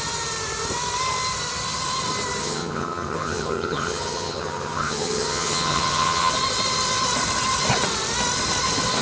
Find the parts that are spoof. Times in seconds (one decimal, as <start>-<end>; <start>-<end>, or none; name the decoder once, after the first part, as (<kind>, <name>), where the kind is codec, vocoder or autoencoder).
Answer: 2.4-6.3 (vocoder, HiFi-GAN)